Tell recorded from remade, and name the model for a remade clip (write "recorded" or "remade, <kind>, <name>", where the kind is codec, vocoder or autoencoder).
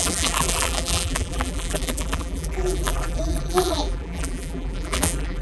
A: remade, vocoder, BigVGAN v2